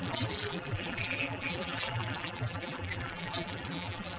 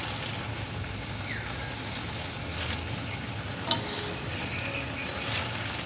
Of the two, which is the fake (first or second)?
first